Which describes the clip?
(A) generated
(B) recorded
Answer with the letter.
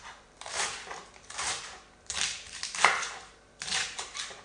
A